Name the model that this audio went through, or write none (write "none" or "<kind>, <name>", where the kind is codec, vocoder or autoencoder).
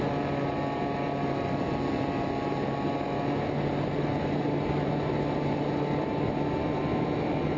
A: none